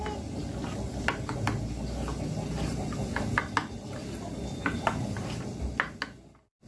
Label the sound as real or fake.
real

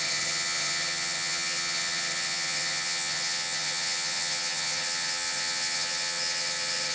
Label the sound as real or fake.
fake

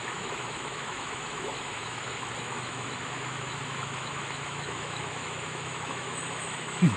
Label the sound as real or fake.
fake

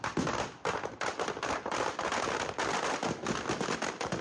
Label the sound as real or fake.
real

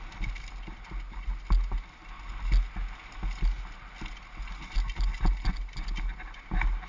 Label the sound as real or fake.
real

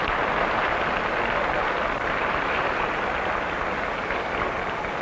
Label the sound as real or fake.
real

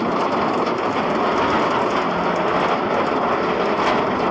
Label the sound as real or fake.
real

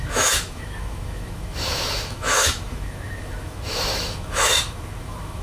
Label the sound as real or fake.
fake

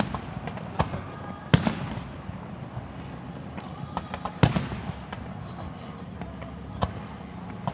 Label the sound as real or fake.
real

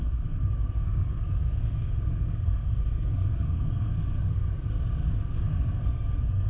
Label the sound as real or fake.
fake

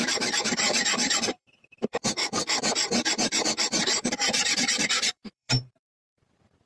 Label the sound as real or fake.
fake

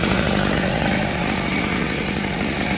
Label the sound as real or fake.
fake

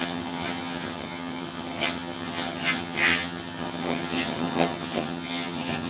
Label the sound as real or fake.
fake